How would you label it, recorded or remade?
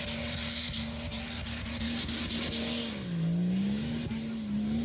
recorded